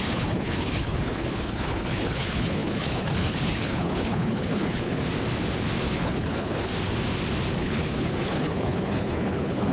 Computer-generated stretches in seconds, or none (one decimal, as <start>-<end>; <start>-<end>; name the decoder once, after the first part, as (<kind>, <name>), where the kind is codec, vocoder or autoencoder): 0.0-5.0 (codec, HILCodec); 5.8-6.7; 7.6-9.7